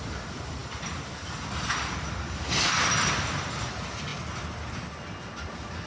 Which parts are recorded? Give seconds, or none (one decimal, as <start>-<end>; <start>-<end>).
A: 0.0-5.9